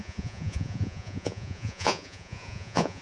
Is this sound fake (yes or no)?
yes